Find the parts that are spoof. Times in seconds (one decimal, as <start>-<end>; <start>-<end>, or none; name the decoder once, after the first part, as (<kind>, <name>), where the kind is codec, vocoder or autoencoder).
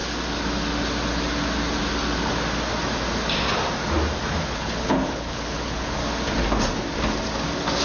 4.4-6.0 (codec, HILCodec)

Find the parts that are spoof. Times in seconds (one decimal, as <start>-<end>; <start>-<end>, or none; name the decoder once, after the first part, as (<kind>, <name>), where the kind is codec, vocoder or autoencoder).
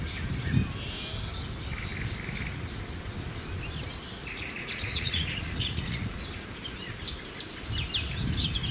4.2-6.2 (vocoder, Vocos)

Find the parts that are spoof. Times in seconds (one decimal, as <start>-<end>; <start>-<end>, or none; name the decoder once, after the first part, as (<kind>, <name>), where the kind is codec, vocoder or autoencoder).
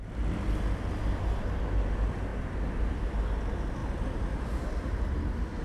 2.3-3.1 (vocoder, BigVGAN v2)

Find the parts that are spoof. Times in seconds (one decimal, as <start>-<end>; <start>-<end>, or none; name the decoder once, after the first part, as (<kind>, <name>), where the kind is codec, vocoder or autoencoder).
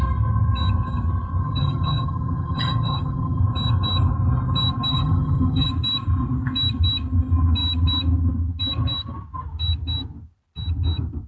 1.4-3.4 (vocoder, HiFi-GAN); 4.9-5.7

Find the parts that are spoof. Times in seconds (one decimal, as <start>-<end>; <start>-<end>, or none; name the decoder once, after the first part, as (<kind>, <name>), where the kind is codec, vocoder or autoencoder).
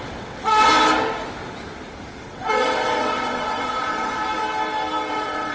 0.0-0.7 (vocoder, WaveNeXt); 2.2-4.4; 5.1-5.5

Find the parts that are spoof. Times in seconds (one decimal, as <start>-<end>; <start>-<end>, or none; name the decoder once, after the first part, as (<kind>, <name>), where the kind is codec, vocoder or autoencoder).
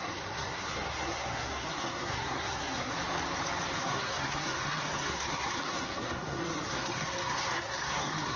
0.0-2.9 (codec, SNAC); 3.8-8.4